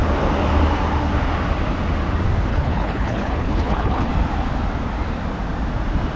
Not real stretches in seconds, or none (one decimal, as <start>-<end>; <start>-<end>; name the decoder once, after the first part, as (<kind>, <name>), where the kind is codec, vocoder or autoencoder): 2.5-4.1 (codec, HILCodec)